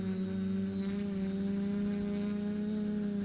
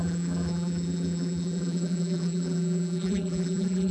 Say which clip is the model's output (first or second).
second